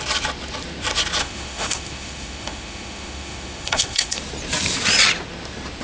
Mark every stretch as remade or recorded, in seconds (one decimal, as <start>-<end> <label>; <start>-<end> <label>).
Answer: 0.0-1.2 recorded; 1.2-4.2 remade; 4.2-5.8 recorded